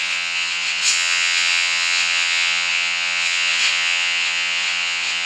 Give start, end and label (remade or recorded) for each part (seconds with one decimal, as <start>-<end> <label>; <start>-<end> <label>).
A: 0.0-5.3 remade